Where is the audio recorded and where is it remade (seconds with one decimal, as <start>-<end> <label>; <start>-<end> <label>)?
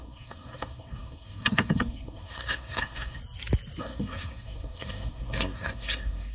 0.0-3.2 remade; 3.2-3.8 recorded; 3.8-6.3 remade